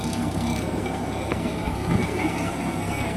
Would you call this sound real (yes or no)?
no